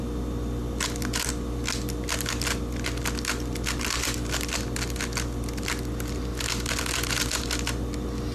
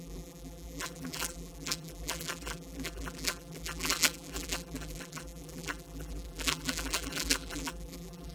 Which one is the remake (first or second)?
second